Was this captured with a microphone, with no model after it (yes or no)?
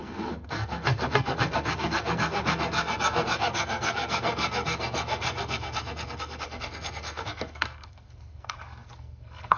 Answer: no